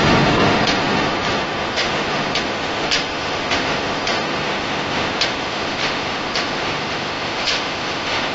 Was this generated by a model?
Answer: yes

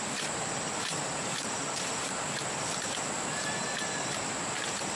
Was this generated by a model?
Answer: no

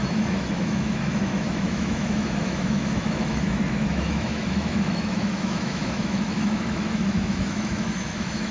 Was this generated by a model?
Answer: yes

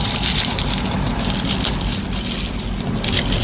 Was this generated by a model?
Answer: no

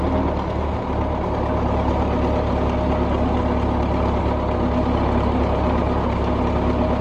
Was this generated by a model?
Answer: no